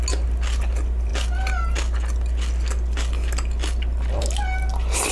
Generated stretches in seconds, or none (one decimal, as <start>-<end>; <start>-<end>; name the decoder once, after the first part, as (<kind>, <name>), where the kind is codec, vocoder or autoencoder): none